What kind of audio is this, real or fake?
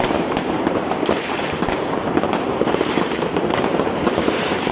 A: fake